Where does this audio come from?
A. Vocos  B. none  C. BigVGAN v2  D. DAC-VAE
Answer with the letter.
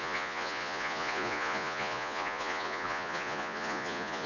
A